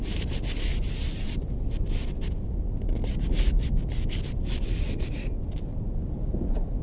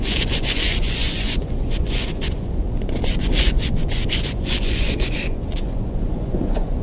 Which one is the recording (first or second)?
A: first